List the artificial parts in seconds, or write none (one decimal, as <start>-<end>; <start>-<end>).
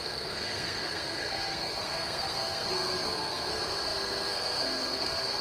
0.0-5.4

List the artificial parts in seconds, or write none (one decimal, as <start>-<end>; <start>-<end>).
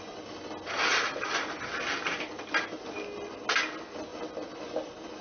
none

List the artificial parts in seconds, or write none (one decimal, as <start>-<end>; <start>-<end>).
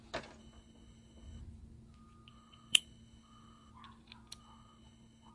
0.4-1.4; 2.3-3.7; 4.4-5.3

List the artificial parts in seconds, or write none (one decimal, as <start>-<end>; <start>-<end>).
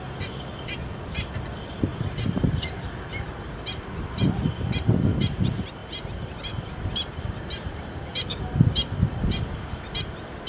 1.9-2.9; 5.8-8.4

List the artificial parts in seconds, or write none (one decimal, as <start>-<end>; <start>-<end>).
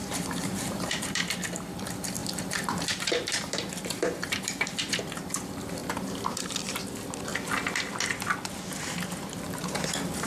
0.0-1.2; 2.2-4.9; 5.8-6.5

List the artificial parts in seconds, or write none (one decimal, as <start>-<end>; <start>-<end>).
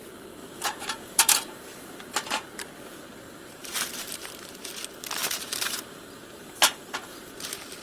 0.4-2.7; 3.6-4.5; 5.2-7.3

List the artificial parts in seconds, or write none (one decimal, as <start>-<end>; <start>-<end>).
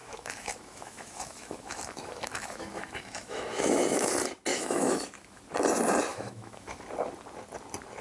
0.0-4.1; 4.5-5.4; 6.1-6.8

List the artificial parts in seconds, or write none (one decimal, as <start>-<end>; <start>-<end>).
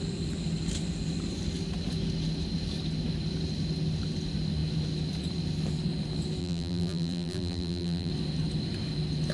6.4-8.1